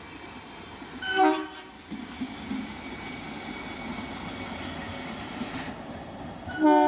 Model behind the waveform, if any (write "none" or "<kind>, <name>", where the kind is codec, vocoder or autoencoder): none